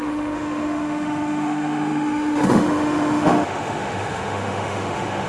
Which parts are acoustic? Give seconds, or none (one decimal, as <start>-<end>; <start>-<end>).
none